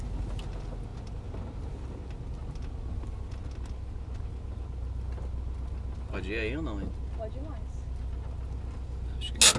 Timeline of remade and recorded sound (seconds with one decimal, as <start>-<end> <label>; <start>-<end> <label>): 0.0-9.6 recorded